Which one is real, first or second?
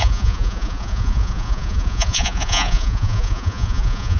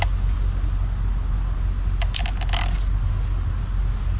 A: second